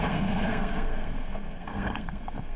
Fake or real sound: fake